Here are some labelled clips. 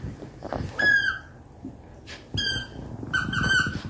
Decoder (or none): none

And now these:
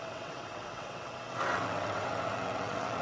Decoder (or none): vocoder, WaveNeXt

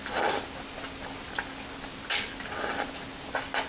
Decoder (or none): none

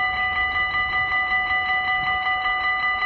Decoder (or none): none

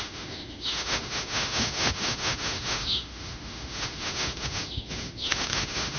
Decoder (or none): autoencoder, DAC-VAE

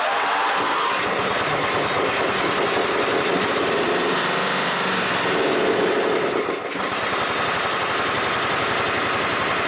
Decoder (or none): none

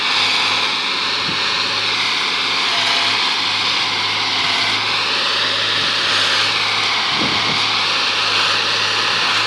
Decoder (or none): none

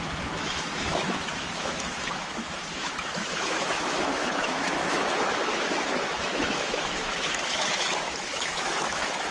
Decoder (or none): autoencoder, DAC-VAE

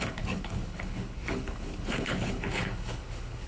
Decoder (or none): codec, HILCodec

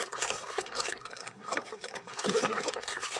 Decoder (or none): codec, SNAC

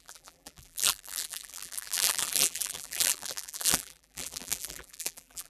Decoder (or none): vocoder, BigVGAN v2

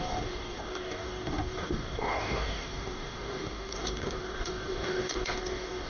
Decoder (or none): codec, DAC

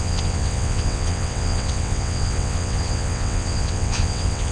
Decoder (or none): vocoder, WaveNeXt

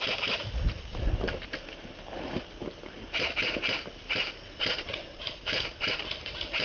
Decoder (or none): vocoder, BigVGAN v2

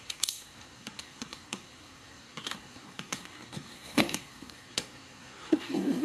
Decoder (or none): codec, SNAC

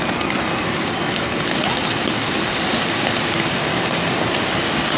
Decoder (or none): none